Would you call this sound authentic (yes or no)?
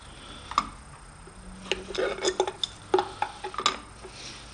yes